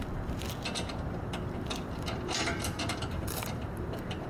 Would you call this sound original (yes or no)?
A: no